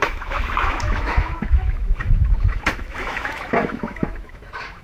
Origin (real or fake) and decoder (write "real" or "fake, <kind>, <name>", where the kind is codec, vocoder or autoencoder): fake, autoencoder, DAC-VAE